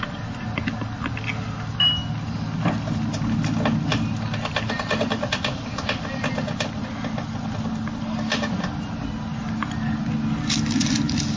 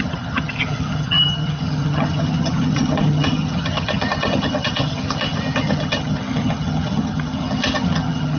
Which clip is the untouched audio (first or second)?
first